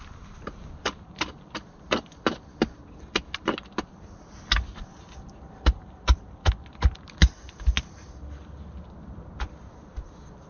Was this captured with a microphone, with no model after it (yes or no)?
yes